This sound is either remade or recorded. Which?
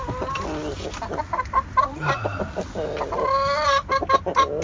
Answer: recorded